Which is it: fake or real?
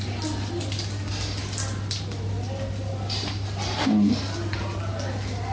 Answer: real